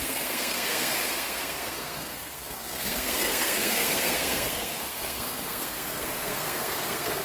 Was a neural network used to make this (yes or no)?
yes